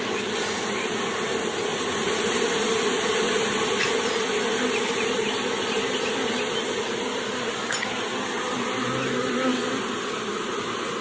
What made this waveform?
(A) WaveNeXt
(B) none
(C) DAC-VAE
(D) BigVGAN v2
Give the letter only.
B